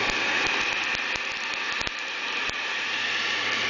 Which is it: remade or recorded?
recorded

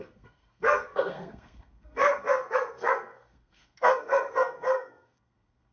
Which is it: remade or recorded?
remade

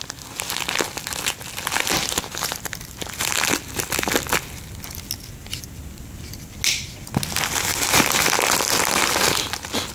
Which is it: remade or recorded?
recorded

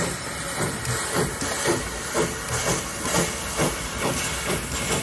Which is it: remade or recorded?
recorded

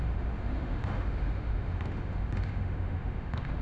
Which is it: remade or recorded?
remade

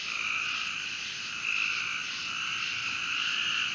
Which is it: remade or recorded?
recorded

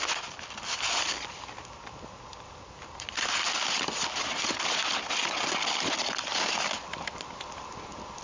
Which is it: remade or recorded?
recorded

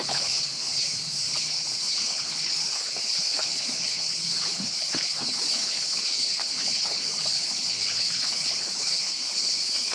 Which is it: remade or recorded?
remade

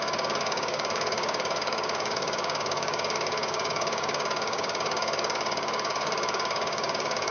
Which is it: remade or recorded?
remade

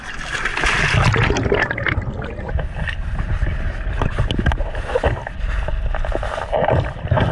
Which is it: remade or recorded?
recorded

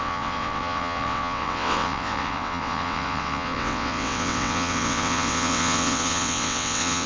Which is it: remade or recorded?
remade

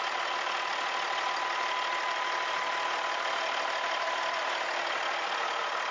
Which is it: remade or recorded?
recorded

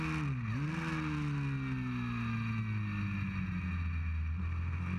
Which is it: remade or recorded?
recorded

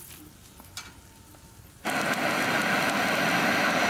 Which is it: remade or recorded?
recorded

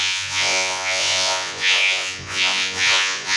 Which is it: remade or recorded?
remade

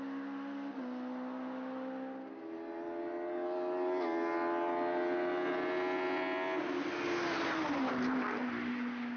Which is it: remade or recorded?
recorded